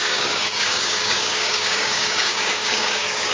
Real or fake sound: fake